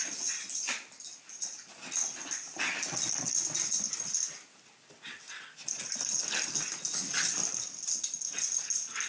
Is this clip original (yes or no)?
yes